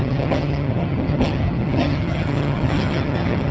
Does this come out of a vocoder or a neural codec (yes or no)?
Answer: yes